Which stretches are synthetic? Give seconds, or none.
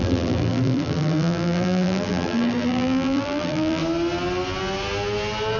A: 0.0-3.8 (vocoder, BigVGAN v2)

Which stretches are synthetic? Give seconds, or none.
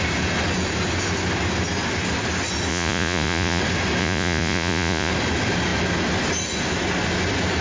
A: 2.7-3.6 (vocoder, Vocos); 4.0-5.1